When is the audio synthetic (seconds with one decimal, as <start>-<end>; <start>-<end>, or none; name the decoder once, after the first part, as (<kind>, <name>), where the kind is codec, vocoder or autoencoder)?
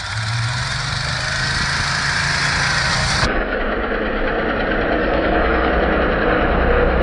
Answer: 3.0-3.6 (codec, DAC); 5.0-5.7